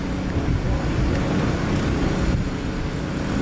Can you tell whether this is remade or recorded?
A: recorded